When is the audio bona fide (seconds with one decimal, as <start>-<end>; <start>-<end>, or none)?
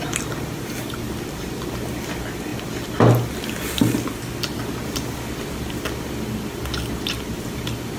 0.0-8.0